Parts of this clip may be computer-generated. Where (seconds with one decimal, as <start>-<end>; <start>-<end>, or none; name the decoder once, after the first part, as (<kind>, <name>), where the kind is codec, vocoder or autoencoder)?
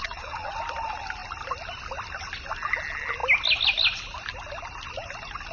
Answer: 0.0-0.5 (vocoder, Vocos)